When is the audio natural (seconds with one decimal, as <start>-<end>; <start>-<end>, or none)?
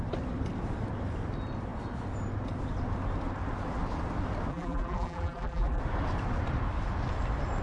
0.0-4.5; 5.8-7.6